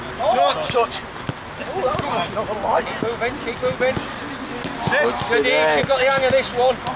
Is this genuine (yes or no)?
yes